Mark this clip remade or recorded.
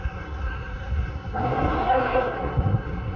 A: remade